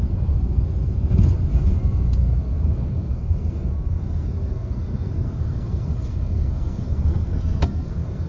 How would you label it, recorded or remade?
remade